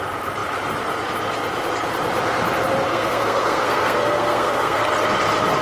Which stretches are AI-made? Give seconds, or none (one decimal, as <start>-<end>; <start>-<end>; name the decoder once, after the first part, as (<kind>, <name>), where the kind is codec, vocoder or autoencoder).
2.9-4.8 (codec, SNAC)